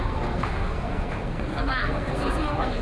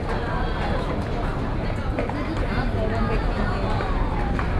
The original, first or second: second